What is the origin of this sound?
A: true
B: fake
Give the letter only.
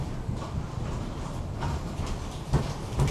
B